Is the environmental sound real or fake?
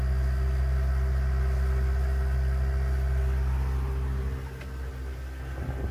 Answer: real